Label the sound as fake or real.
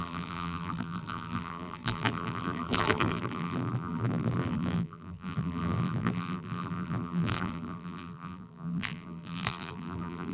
fake